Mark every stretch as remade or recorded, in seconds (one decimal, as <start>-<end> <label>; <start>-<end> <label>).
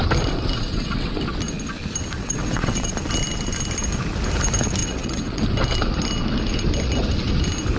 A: 0.0-0.7 recorded; 0.7-1.2 remade; 1.2-2.2 recorded; 2.2-2.9 remade; 2.9-4.8 recorded; 4.8-5.4 remade; 5.4-7.8 recorded